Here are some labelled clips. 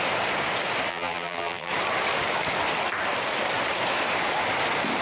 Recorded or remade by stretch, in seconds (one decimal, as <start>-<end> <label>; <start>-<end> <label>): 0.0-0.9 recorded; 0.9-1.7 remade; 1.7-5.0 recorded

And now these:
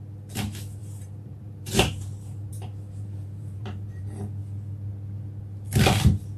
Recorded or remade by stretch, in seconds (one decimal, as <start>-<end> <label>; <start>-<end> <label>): 0.0-0.8 recorded; 0.8-4.0 remade; 4.0-6.4 recorded

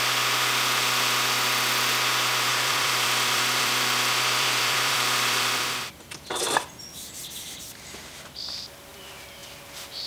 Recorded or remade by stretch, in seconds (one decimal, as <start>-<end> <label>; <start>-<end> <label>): 0.0-2.5 recorded; 2.5-6.7 remade; 6.7-10.1 recorded